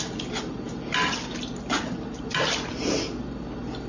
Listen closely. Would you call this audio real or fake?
real